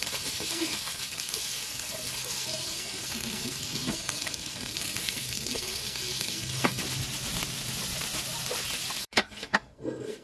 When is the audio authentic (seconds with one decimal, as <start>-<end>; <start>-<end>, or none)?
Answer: 6.8-9.0